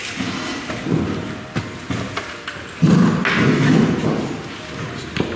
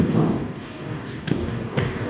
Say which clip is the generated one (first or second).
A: second